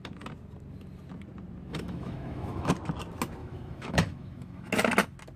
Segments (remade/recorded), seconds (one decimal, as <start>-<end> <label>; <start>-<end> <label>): 0.0-1.7 recorded; 1.7-2.7 remade; 2.7-3.4 recorded; 3.4-4.7 remade; 4.7-5.4 recorded